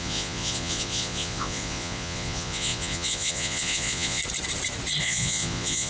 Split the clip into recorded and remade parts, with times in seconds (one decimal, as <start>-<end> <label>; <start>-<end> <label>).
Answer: 0.0-4.2 remade; 4.2-5.0 recorded; 5.0-5.9 remade